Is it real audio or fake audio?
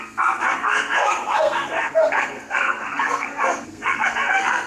fake